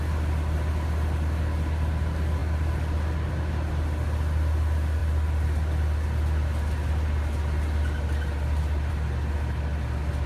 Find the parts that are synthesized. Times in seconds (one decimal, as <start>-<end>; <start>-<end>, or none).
none

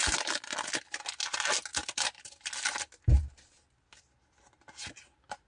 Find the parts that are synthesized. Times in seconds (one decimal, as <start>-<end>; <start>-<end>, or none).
1.7-2.3

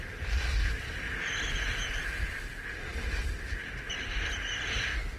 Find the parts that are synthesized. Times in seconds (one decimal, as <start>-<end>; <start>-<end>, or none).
none

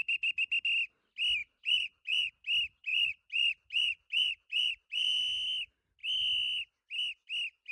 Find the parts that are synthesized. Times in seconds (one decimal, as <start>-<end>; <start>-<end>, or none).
1.4-2.3; 2.9-5.2

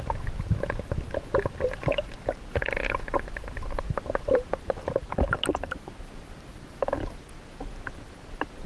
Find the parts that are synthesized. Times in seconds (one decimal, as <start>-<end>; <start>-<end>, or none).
none

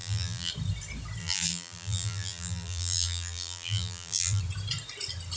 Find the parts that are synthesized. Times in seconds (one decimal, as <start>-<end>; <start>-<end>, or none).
0.0-0.5; 1.2-4.4

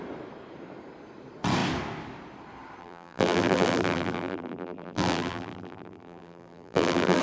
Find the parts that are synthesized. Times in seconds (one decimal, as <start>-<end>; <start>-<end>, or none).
2.8-7.2